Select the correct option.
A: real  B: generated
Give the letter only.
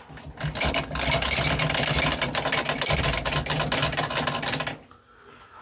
A